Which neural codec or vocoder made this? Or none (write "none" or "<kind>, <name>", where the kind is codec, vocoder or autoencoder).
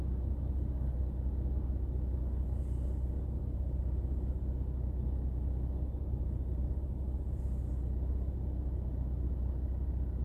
none